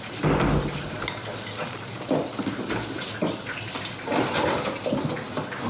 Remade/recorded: recorded